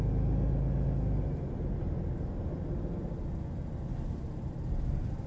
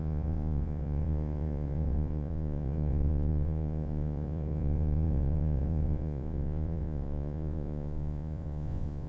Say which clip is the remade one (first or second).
second